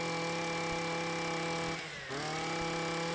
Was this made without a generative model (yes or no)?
yes